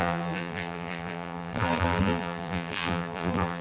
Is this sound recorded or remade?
remade